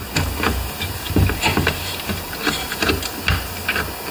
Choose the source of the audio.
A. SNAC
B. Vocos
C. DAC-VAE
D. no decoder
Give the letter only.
D